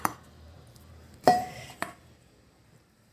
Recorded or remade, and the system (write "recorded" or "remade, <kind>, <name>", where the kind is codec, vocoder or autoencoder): remade, vocoder, BigVGAN v2